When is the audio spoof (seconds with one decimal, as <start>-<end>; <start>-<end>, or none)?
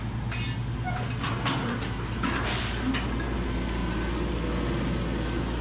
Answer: none